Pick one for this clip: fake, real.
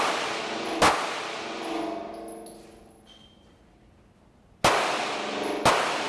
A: real